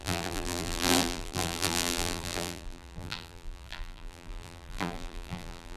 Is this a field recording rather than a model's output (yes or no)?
no